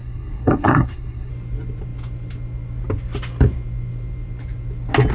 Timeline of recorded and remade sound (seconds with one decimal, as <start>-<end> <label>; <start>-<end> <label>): 0.0-1.3 remade; 1.3-5.1 recorded